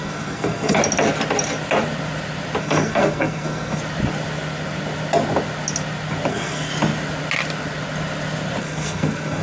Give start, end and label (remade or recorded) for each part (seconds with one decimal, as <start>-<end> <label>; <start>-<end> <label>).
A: 0.0-0.8 remade; 0.8-2.6 recorded; 2.6-3.8 remade; 3.8-6.3 recorded; 6.3-6.7 remade; 6.7-8.6 recorded; 8.6-9.4 remade